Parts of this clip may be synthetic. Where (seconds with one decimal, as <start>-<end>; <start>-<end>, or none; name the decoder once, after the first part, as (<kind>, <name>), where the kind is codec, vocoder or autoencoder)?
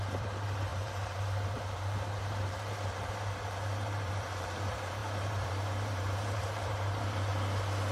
0.0-7.3 (vocoder, BigVGAN v2)